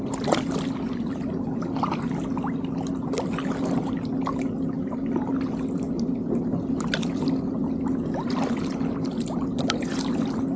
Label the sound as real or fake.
real